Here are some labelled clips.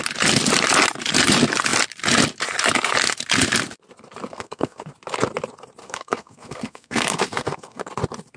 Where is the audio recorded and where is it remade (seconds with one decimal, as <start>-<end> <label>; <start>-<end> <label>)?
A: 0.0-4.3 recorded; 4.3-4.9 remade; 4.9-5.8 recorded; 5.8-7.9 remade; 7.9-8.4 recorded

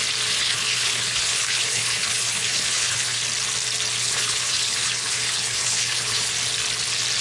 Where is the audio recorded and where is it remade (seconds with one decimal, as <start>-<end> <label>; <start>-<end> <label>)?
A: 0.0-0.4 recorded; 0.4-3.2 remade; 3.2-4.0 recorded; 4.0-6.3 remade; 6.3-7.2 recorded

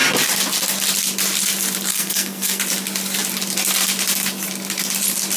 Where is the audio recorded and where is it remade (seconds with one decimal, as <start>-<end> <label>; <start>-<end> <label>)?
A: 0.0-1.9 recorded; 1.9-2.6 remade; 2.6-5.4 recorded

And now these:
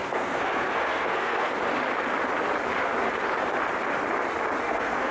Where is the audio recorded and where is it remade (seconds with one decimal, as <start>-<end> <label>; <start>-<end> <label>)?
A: 0.0-1.5 remade; 1.5-4.6 recorded; 4.6-5.1 remade